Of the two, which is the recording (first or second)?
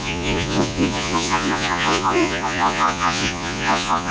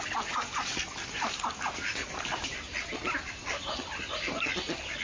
second